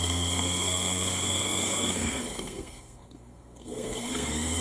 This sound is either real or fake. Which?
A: fake